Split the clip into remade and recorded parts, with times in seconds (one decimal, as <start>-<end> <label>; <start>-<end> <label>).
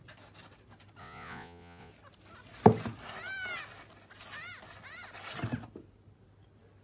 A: 0.0-1.0 recorded; 1.0-1.9 remade; 1.9-6.8 recorded